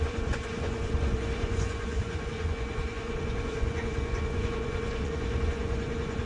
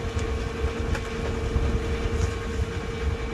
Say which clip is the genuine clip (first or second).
second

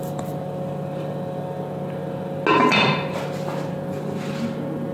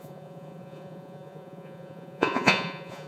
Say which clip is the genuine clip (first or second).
first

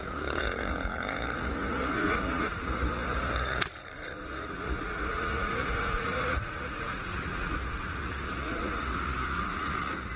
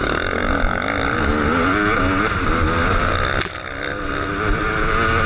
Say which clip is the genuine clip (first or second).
second